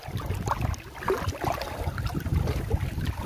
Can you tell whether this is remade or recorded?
recorded